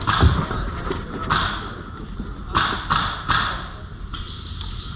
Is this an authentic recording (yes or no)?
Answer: yes